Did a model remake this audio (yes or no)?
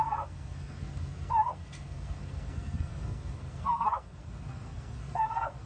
yes